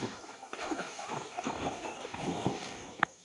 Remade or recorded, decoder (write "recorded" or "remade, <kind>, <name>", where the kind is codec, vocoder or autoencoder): remade, codec, DAC